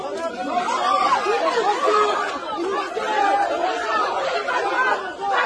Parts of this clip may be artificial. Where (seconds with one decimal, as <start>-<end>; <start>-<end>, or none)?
0.4-2.3; 3.6-4.5